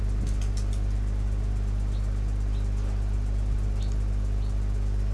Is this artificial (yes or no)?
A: no